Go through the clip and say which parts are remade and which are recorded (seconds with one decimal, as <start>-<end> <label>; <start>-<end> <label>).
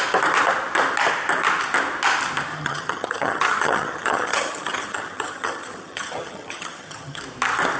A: 0.0-2.5 recorded; 2.5-7.2 remade; 7.2-7.8 recorded